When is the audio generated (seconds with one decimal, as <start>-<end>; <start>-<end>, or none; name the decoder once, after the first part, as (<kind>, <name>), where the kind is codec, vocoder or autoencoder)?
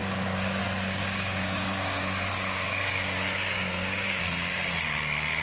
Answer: 0.0-0.6 (codec, DAC); 1.0-4.2